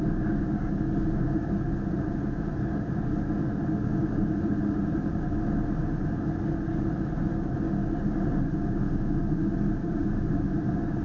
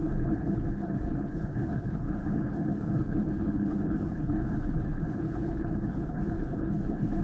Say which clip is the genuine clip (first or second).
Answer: first